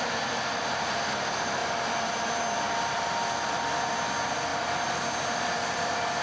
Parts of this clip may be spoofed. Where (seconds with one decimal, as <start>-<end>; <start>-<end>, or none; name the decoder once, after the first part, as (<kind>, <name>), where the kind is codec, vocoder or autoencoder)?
none